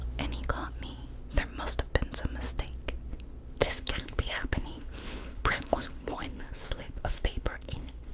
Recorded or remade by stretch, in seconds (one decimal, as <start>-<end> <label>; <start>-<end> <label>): 0.0-3.6 recorded; 3.6-8.1 remade